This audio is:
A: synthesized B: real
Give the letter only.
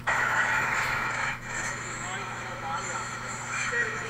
A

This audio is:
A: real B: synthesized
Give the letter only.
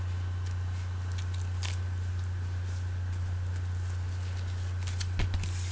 A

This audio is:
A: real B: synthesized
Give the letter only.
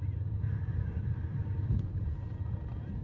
B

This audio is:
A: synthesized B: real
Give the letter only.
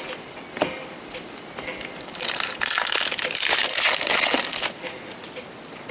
B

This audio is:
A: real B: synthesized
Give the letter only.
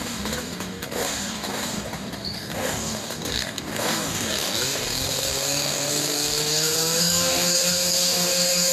B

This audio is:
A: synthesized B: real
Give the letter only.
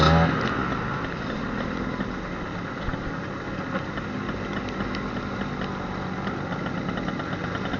B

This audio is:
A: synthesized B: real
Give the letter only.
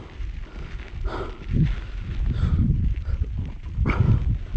B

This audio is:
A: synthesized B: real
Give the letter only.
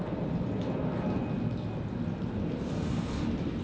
B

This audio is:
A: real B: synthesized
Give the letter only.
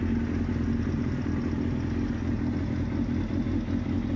A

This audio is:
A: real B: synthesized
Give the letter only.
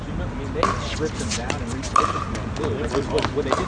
A